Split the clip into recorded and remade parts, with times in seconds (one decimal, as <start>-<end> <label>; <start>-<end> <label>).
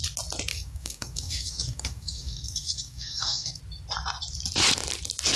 0.0-0.5 recorded; 0.5-3.6 remade; 3.6-5.4 recorded